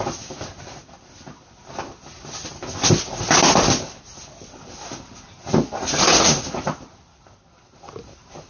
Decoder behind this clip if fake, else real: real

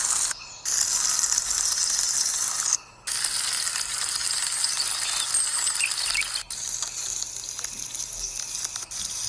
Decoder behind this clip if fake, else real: real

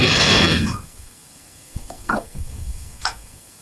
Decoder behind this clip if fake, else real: fake, codec, SNAC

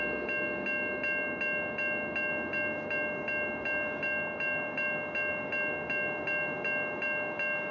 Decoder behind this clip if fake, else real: real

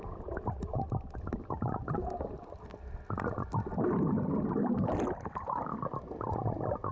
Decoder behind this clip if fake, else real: real